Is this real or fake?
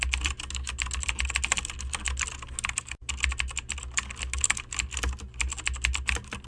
real